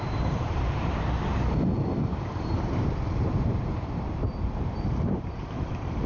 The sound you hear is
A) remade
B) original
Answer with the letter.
A